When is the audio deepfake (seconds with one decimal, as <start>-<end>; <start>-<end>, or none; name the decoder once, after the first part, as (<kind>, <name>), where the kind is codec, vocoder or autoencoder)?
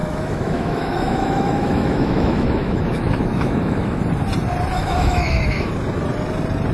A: 0.0-4.0 (autoencoder, DAC-VAE); 4.8-5.7